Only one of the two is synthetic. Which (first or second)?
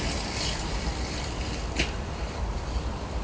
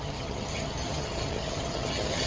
second